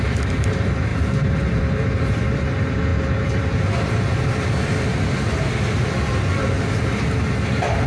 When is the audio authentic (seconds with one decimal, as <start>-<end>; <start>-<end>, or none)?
4.9-7.5